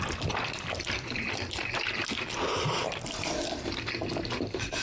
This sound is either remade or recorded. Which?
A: remade